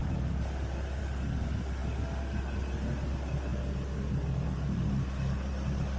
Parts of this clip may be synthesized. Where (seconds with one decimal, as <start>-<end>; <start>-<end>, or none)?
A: none